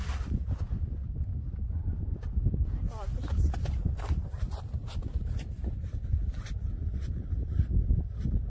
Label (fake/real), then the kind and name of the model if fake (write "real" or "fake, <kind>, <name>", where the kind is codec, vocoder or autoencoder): real